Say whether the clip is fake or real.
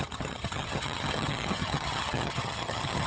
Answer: fake